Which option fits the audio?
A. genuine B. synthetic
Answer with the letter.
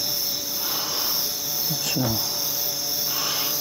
A